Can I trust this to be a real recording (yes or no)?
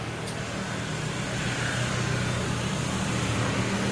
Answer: yes